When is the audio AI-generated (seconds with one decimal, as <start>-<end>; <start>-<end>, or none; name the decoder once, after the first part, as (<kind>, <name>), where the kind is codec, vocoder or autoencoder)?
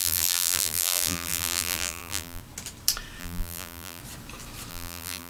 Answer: 0.0-2.4 (vocoder, BigVGAN v2); 3.2-4.0; 4.7-5.3